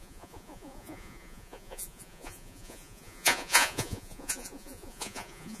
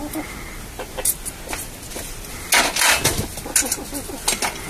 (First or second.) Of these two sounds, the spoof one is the first